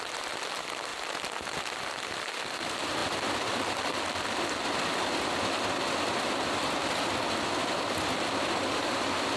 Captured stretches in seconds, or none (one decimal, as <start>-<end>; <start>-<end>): 0.0-9.4